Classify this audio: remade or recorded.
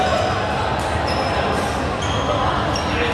recorded